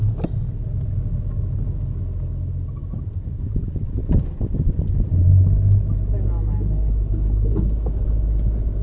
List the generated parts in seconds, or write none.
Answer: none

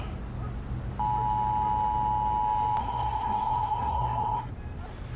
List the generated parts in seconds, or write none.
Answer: 2.8-4.5 (codec, SNAC)

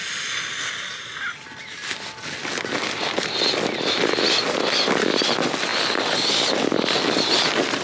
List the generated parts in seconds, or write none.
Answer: none

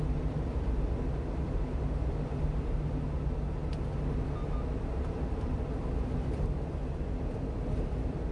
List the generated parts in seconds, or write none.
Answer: none